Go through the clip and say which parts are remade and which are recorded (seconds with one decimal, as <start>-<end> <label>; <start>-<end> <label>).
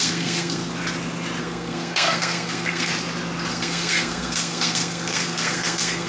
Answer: 0.0-0.6 remade; 0.6-1.4 recorded; 1.4-2.9 remade; 2.9-3.5 recorded; 3.5-6.1 remade